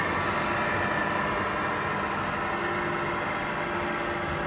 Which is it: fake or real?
real